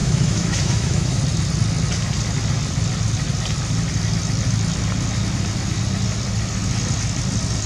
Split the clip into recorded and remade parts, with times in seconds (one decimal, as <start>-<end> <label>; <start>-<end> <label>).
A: 0.0-1.2 remade; 1.2-7.7 recorded